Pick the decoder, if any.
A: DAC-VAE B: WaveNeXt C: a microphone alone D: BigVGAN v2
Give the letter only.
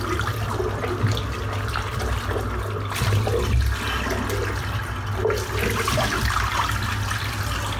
C